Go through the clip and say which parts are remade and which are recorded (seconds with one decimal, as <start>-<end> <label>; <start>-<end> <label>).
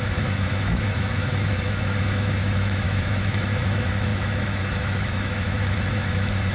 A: 0.0-6.5 remade